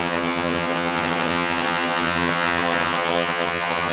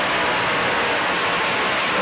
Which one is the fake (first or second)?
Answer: first